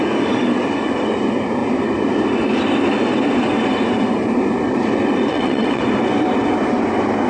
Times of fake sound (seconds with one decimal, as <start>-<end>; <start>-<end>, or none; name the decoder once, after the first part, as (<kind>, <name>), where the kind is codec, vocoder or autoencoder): 5.3-5.8 (vocoder, WaveNeXt)